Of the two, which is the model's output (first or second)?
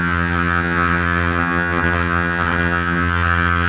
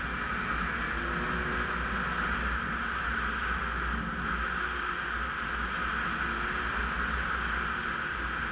first